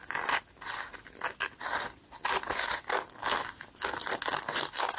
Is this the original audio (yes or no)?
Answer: yes